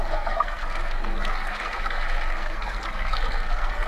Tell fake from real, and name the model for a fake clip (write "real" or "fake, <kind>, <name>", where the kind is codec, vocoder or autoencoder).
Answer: fake, codec, SNAC